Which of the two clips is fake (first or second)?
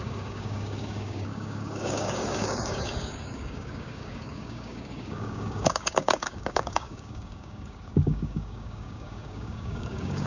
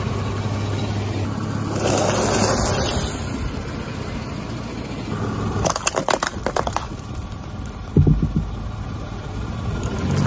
first